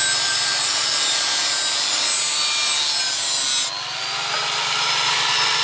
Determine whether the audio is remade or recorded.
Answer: recorded